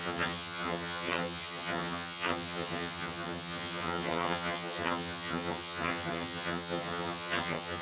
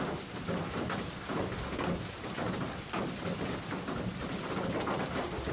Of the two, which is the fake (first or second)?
first